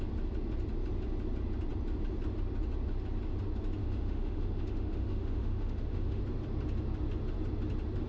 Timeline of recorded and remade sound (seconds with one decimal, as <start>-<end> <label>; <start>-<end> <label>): 0.0-3.8 recorded; 3.8-6.2 remade; 6.2-8.1 recorded